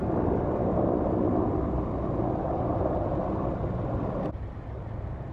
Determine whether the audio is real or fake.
real